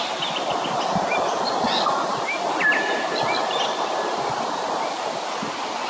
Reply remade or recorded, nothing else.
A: recorded